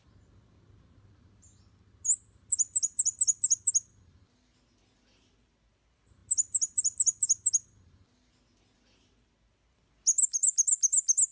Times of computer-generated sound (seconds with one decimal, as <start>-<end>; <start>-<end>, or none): none